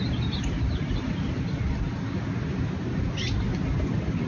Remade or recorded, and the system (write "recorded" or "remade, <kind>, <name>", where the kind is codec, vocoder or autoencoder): recorded